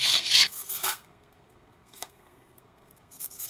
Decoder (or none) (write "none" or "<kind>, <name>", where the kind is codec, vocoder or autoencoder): codec, SNAC